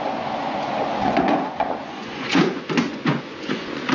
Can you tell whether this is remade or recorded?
remade